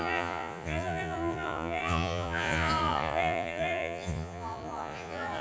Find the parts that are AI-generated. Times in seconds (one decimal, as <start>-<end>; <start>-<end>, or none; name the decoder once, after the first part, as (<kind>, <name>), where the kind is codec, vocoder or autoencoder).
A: 0.0-5.4 (vocoder, Vocos)

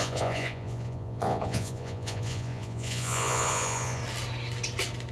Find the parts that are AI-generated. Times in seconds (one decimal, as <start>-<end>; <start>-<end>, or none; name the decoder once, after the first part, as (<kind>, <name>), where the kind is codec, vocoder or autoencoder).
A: 0.0-4.0 (vocoder, Vocos)

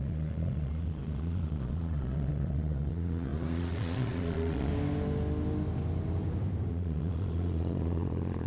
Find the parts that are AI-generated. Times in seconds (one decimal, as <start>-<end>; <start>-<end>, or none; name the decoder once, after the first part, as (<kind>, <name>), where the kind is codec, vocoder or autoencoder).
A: 0.0-4.7 (vocoder, Vocos); 6.7-8.5